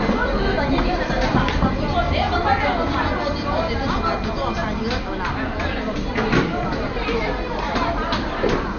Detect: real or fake real